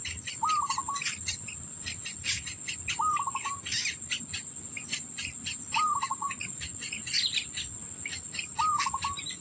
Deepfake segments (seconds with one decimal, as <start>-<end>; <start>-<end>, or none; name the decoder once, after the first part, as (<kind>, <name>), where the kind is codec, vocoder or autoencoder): 6.2-6.8 (vocoder, Vocos)